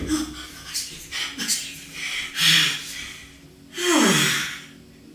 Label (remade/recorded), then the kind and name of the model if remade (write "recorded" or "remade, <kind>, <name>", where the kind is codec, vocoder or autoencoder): recorded